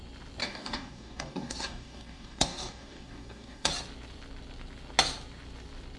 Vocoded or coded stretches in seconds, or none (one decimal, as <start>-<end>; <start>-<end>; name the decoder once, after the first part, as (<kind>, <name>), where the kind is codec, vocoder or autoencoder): 0.4-3.7 (codec, DAC)